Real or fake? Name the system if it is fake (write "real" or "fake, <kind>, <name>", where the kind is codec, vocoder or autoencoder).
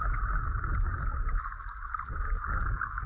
real